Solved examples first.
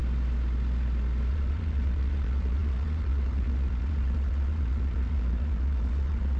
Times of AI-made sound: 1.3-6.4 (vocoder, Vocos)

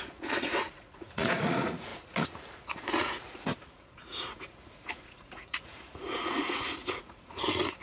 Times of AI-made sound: 0.0-7.8 (vocoder, Vocos)

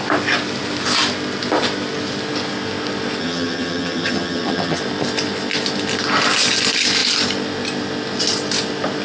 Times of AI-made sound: 3.2-4.8 (vocoder, HiFi-GAN)

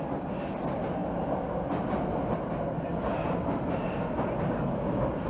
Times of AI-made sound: none

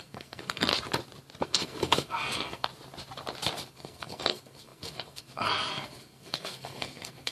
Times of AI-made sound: 0.0-0.7 (codec, SNAC); 1.4-2.7; 3.7-7.3